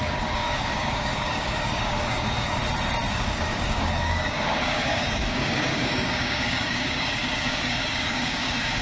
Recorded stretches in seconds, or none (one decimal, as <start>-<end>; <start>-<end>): 2.6-3.1